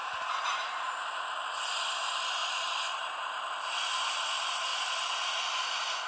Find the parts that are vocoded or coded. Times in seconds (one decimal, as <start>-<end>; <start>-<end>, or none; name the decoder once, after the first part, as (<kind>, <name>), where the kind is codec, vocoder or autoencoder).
0.0-0.9 (vocoder, BigVGAN v2)